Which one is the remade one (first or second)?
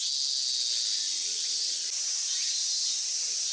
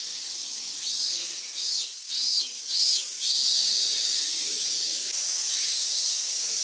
second